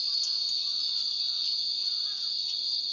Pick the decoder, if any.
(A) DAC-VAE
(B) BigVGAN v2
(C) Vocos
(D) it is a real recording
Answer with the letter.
D